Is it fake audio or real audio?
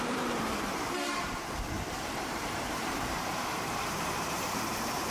fake